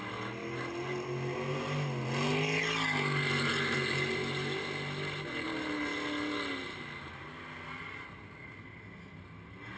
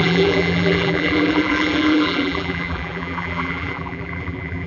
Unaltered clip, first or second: first